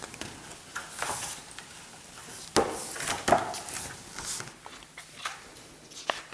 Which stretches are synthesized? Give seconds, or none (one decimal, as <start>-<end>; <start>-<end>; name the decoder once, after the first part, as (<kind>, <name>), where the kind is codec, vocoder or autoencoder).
none